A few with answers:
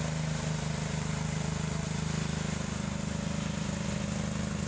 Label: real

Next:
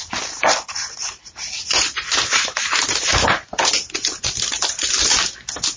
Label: real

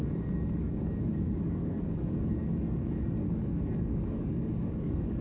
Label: fake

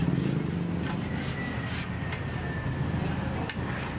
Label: real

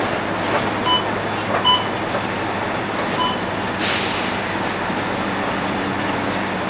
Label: real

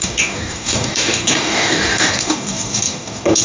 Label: fake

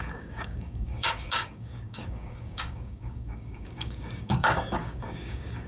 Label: fake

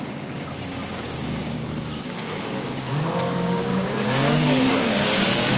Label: fake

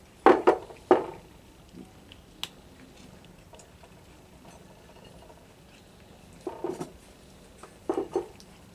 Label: real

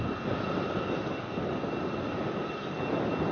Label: real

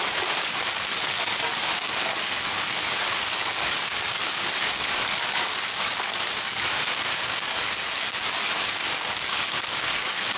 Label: fake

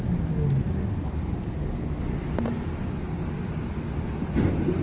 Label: real